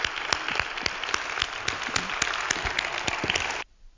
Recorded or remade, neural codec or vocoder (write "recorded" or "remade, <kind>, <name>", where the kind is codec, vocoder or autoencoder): recorded